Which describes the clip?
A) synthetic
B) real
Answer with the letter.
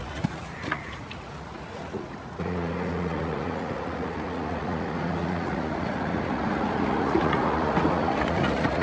A